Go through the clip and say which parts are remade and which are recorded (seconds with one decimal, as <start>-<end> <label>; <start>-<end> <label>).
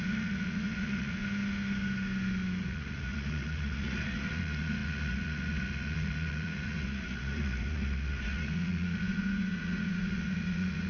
0.0-1.2 remade; 1.2-2.6 recorded; 2.6-10.9 remade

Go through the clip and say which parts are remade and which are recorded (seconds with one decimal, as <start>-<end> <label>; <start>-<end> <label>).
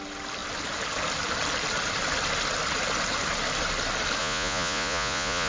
0.0-4.2 recorded; 4.2-5.5 remade